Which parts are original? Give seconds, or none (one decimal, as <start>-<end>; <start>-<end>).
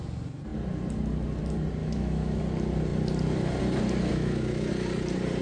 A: 0.0-1.8; 2.4-4.1; 4.7-5.4